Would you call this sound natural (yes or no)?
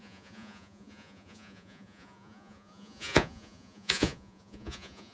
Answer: no